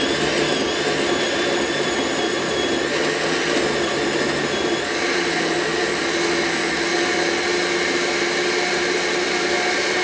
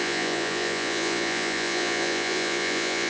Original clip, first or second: first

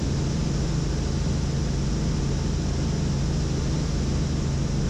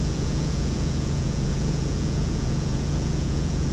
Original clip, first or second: first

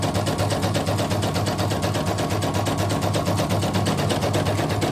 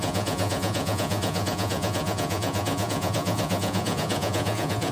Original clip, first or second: first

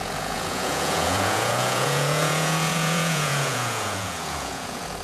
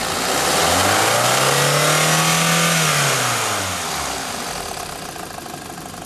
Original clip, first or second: second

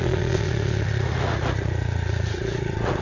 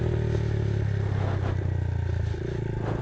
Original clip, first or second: second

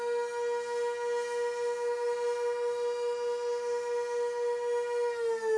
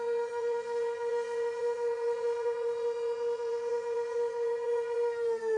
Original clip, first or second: first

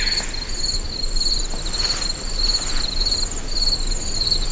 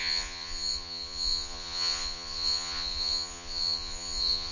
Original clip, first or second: first